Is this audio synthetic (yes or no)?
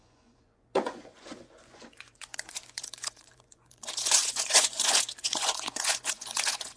yes